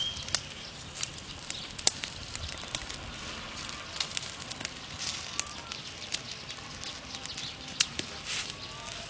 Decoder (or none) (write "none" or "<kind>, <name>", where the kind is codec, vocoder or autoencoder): none